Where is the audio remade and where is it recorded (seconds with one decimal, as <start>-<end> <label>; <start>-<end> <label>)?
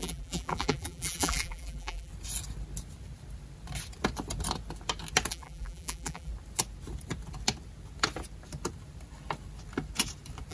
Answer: 0.0-2.1 remade; 2.1-5.3 recorded; 5.3-6.3 remade; 6.3-10.5 recorded